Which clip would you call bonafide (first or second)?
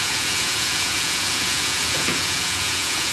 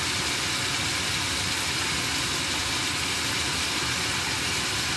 second